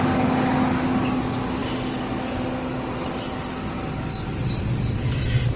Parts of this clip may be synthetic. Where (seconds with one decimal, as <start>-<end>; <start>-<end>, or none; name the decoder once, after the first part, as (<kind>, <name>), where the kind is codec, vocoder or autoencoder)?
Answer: none